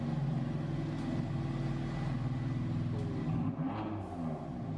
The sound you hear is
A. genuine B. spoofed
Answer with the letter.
A